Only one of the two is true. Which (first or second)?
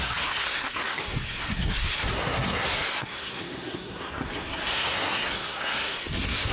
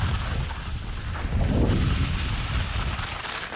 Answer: second